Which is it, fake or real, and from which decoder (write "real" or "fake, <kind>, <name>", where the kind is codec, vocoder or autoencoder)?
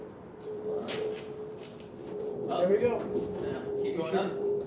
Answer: fake, vocoder, BigVGAN v2